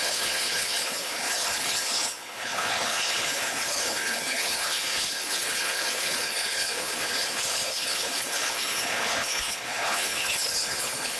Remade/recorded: remade